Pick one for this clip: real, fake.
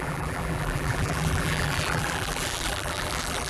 fake